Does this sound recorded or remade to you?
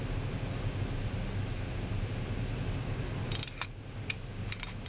recorded